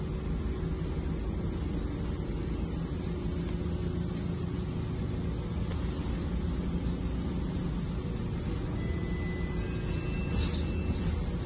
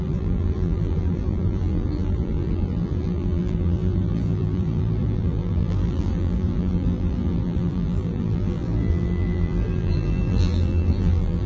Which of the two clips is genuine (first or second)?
first